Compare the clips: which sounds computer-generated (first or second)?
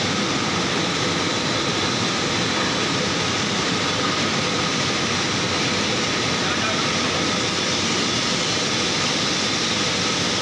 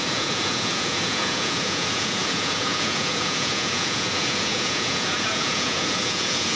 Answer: second